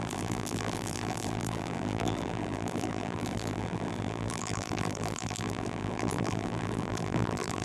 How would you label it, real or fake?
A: fake